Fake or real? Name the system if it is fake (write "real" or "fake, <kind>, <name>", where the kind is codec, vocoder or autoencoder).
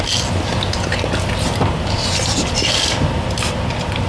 real